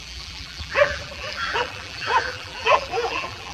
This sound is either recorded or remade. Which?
remade